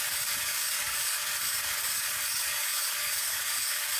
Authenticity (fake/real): fake